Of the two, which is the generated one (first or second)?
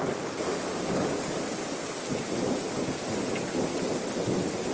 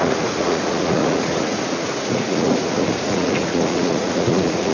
second